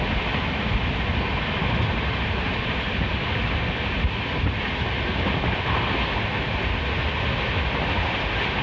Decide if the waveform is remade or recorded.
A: recorded